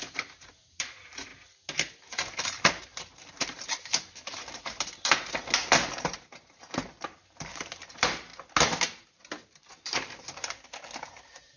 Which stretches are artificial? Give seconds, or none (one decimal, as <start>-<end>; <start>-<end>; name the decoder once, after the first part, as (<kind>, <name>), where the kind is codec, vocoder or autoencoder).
0.0-1.3 (vocoder, BigVGAN v2); 2.3-8.3; 9.4-11.6